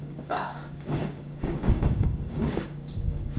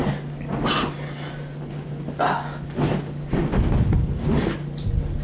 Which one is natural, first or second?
second